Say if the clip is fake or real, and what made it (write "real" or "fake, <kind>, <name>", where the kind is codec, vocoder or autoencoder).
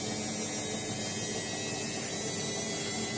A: real